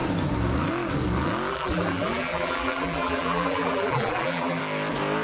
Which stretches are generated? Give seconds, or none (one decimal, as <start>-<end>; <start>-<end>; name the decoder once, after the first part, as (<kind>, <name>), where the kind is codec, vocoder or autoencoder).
1.5-4.6 (vocoder, BigVGAN v2)